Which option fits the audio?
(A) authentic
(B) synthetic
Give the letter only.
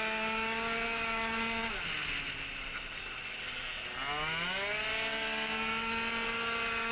A